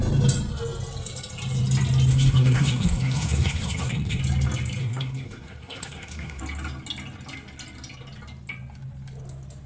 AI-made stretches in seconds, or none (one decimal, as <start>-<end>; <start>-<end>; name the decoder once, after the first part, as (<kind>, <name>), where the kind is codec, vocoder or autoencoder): 2.1-4.2 (codec, SNAC); 4.8-6.4